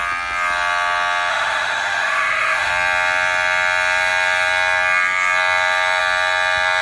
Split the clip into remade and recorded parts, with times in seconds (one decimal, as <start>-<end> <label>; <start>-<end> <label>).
0.0-1.3 recorded; 1.3-2.7 remade; 2.7-6.8 recorded